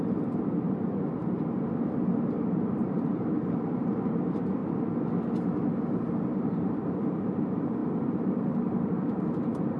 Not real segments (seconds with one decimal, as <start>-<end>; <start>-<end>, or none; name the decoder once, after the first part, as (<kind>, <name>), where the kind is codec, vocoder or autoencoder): 0.0-1.2 (vocoder, BigVGAN v2); 2.4-4.6; 6.2-9.8